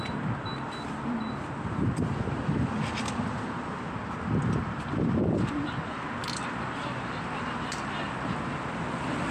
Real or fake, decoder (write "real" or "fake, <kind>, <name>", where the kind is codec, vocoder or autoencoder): real